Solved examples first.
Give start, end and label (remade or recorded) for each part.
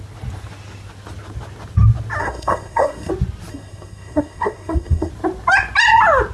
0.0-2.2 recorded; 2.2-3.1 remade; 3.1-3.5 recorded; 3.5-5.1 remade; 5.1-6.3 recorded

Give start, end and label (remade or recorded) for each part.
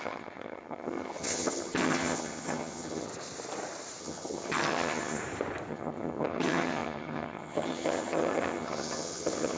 0.0-3.1 remade; 3.1-4.0 recorded; 4.0-5.2 remade; 5.2-5.7 recorded; 5.7-9.6 remade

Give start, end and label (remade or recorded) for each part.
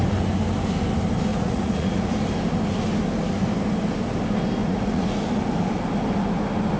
0.0-1.3 recorded; 1.3-2.1 remade; 2.1-4.6 recorded; 4.6-5.2 remade; 5.2-6.8 recorded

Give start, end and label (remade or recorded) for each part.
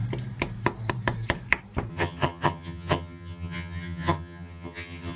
0.0-1.9 recorded; 1.9-5.2 remade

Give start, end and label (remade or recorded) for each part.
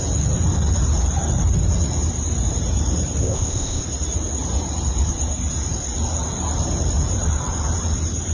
0.0-3.2 recorded; 3.2-3.8 remade; 3.8-8.3 recorded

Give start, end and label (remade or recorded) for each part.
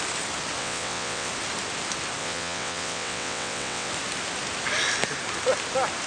0.0-0.6 recorded; 0.6-1.3 remade; 1.3-2.2 recorded; 2.2-3.9 remade; 3.9-6.1 recorded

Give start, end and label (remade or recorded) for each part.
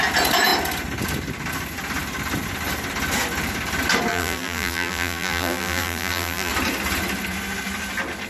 0.0-4.1 recorded; 4.1-6.5 remade; 6.5-8.3 recorded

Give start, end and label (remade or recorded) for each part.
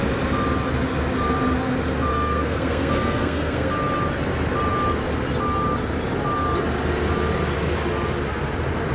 0.0-2.1 recorded; 2.1-3.7 remade; 3.7-8.9 recorded